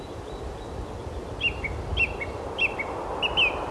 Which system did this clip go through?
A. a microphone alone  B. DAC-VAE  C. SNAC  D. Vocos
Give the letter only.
A